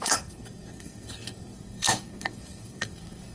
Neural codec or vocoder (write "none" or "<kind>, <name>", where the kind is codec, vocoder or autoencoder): codec, SNAC